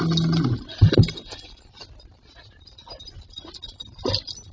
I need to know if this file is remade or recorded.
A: recorded